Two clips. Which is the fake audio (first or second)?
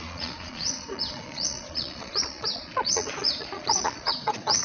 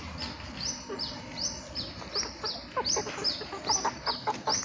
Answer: first